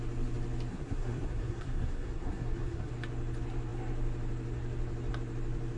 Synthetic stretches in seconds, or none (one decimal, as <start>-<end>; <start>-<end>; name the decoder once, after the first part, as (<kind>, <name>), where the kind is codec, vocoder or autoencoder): 0.7-2.9 (codec, SNAC)